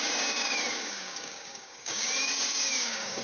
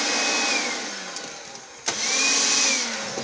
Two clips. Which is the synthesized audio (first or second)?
first